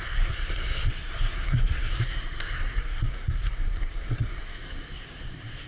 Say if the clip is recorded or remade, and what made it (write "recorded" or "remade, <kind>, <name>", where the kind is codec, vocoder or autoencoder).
remade, codec, SNAC